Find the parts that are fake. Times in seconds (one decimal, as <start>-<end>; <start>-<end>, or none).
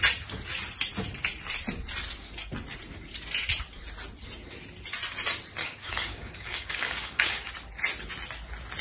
5.6-7.5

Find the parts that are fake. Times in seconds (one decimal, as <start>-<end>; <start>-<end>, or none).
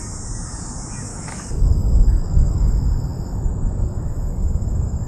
1.1-2.7